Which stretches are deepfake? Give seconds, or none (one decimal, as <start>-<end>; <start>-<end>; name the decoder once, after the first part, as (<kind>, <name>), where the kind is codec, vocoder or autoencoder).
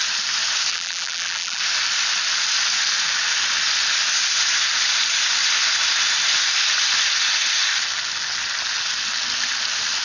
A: 0.7-1.6 (vocoder, BigVGAN v2)